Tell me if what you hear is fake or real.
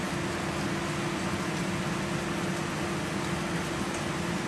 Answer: real